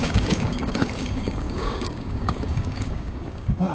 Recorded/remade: remade